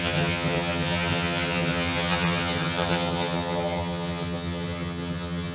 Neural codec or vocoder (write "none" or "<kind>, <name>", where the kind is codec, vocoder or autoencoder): vocoder, HiFi-GAN